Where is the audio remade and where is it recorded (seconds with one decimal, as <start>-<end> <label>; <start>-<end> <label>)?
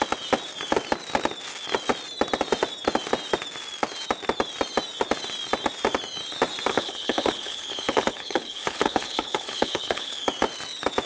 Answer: 0.0-6.7 recorded; 6.7-10.2 remade; 10.2-11.1 recorded